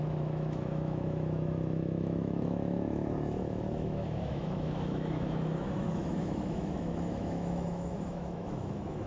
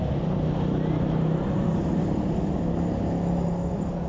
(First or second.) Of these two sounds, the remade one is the first